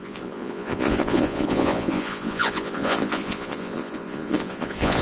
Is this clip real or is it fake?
fake